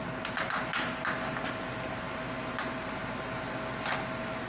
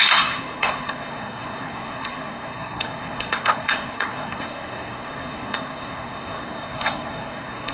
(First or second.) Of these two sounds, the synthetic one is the second